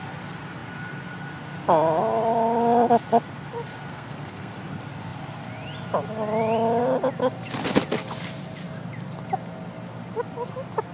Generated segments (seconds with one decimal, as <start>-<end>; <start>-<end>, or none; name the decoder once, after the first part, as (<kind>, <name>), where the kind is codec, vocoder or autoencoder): 3.9-4.5 (codec, SNAC)